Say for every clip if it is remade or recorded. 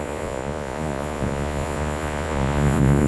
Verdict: remade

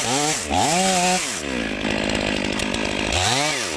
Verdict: recorded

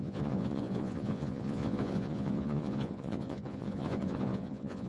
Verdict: remade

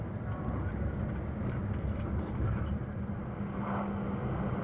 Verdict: recorded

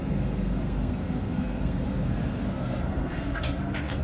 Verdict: remade